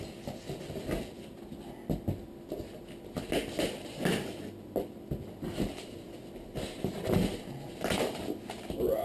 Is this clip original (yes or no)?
yes